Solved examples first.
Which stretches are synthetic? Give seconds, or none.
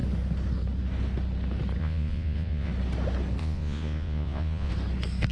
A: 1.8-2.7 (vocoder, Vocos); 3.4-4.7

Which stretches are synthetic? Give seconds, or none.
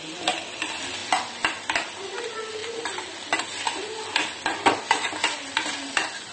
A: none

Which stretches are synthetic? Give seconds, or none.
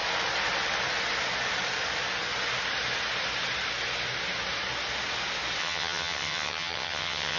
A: 5.6-7.4 (vocoder, HiFi-GAN)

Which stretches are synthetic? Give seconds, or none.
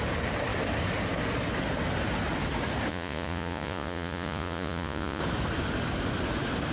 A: 2.9-5.2 (vocoder, Vocos)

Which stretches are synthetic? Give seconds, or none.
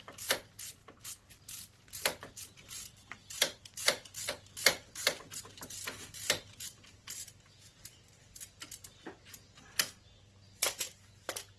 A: none